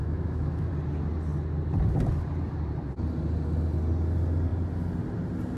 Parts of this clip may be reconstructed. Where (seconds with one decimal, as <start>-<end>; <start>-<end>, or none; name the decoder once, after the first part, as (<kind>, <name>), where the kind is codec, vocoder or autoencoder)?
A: 0.0-0.7 (autoencoder, DAC-VAE)